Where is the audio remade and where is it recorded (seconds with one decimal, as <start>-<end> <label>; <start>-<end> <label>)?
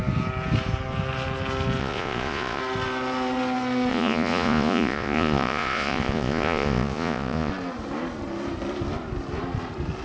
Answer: 0.0-1.8 recorded; 1.8-2.6 remade; 2.6-3.9 recorded; 3.9-7.5 remade; 7.5-10.0 recorded